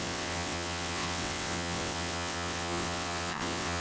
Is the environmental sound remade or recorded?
remade